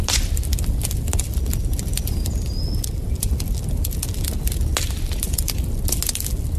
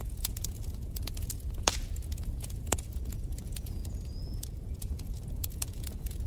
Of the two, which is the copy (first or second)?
second